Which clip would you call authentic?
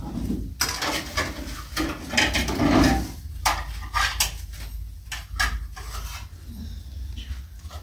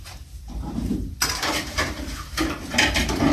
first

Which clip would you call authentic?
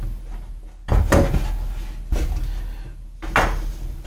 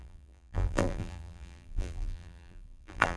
first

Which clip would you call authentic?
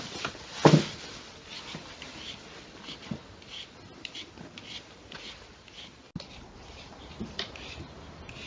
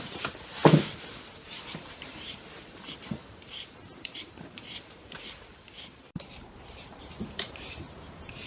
first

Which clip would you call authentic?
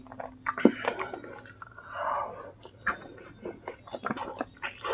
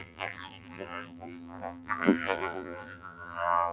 first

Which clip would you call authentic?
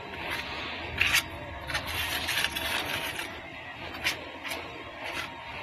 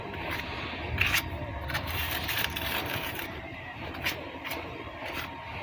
first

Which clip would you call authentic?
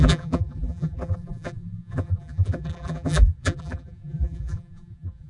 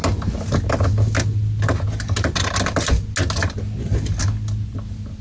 second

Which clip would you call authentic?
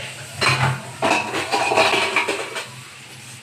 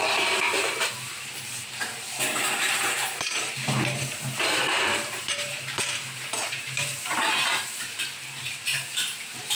first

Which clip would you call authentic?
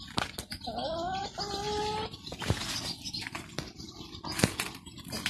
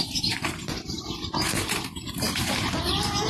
first